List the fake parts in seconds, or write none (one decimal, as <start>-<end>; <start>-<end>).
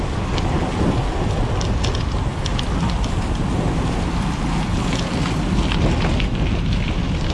none